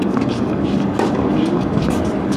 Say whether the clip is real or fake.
fake